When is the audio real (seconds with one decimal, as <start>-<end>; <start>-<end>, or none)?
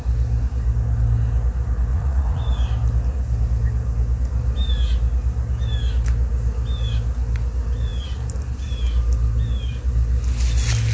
0.0-1.9; 2.4-10.9